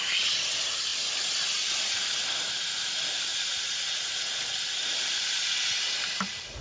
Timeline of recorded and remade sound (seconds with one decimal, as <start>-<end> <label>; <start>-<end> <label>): 0.0-3.3 recorded; 3.3-3.9 remade; 3.9-6.6 recorded